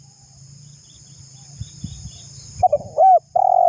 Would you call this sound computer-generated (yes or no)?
no